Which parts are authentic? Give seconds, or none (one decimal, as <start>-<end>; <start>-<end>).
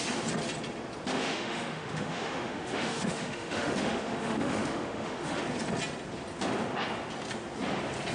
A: 0.0-1.1; 5.4-8.1